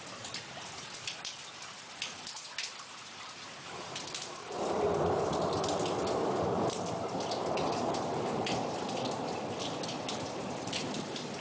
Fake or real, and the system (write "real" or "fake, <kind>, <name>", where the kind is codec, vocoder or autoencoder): fake, vocoder, BigVGAN v2